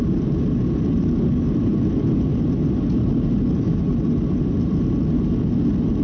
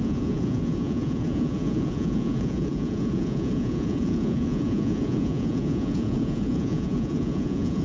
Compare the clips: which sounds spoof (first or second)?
second